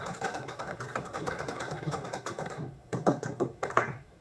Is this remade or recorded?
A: remade